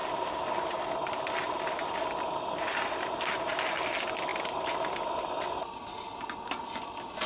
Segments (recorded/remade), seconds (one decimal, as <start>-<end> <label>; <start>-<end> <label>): 0.0-7.3 recorded

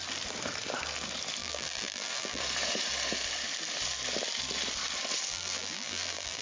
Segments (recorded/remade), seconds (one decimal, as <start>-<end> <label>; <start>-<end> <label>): 0.0-1.4 recorded; 1.4-2.4 remade; 2.4-5.3 recorded; 5.3-6.4 remade

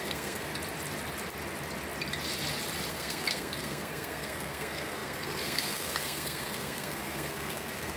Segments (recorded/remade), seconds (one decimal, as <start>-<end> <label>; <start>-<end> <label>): 0.0-0.5 remade; 0.5-2.9 recorded; 2.9-8.0 remade

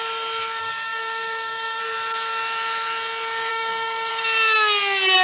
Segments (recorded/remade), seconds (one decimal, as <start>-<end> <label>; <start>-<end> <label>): 0.0-0.6 recorded; 0.6-1.8 remade; 1.8-3.5 recorded; 3.5-4.1 remade; 4.1-5.2 recorded

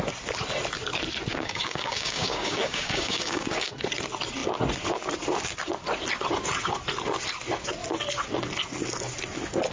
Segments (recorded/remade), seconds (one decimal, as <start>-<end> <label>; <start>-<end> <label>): 0.0-1.3 recorded; 1.3-3.7 remade; 3.7-9.7 recorded

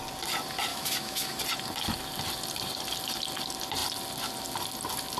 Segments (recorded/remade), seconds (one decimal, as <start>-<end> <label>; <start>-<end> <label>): 0.0-0.7 recorded; 0.7-1.4 remade; 1.4-5.2 recorded

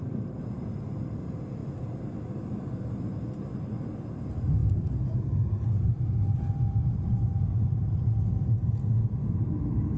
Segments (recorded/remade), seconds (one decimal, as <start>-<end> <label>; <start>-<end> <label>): 0.0-10.0 recorded